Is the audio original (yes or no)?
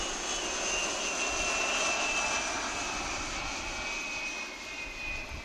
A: yes